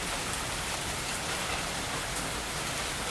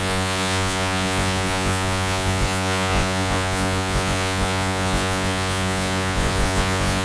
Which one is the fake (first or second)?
second